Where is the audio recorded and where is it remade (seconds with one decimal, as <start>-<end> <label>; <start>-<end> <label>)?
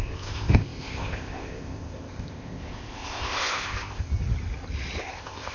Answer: 0.0-4.1 remade; 4.1-5.0 recorded; 5.0-5.5 remade